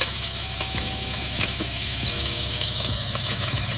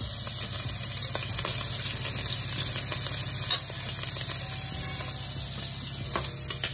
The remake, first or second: first